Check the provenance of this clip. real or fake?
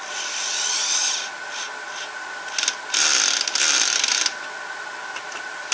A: real